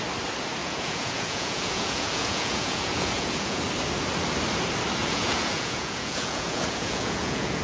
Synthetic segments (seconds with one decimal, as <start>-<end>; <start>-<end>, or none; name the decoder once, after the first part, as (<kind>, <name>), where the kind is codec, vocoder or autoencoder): 0.6-3.6 (vocoder, Vocos); 5.0-7.6